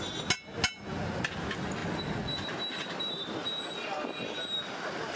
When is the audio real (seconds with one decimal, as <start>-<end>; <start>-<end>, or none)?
0.0-5.2